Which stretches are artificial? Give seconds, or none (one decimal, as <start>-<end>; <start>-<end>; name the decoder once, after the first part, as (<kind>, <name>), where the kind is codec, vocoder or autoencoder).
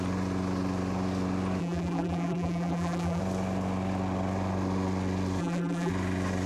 1.6-3.2 (vocoder, BigVGAN v2); 5.4-5.9